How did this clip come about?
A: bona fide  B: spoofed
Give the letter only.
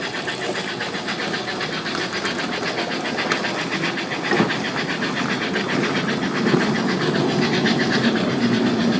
A